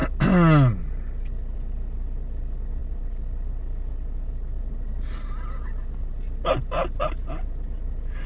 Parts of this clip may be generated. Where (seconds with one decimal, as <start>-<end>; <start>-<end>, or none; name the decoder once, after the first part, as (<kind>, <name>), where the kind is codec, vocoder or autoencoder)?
none